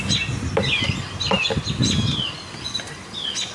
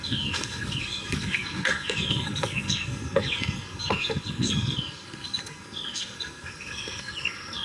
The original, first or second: first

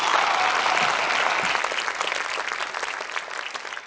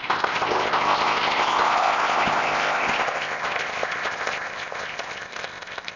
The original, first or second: first